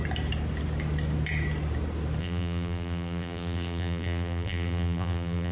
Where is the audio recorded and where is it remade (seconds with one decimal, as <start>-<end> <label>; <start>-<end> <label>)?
0.0-2.2 recorded; 2.2-5.5 remade